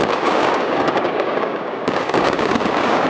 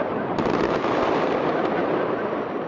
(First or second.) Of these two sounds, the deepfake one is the first